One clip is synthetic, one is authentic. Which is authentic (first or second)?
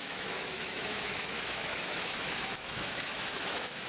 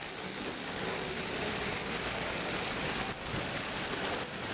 second